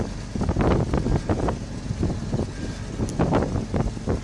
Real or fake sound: real